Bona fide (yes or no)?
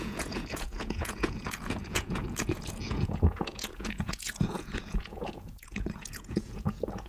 no